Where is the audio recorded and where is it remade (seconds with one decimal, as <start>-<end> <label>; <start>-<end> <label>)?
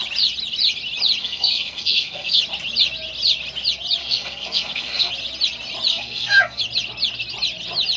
0.0-1.2 recorded; 1.2-2.4 remade; 2.4-4.0 recorded; 4.0-5.1 remade; 5.1-5.9 recorded; 5.9-6.6 remade; 6.6-8.0 recorded